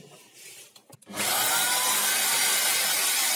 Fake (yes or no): no